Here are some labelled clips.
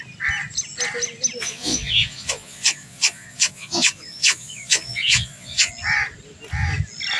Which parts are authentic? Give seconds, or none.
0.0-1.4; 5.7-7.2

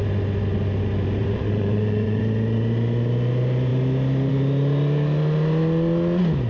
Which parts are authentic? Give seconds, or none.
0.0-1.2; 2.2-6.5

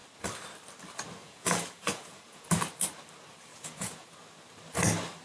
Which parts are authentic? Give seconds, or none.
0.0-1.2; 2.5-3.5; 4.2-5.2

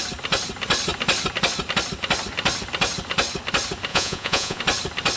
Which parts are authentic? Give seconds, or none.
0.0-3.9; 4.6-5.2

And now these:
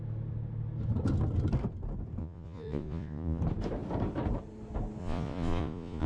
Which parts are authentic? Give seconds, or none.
0.0-2.2; 3.4-5.0